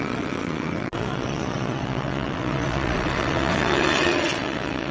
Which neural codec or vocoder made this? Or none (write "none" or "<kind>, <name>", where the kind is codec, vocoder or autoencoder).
vocoder, WaveNeXt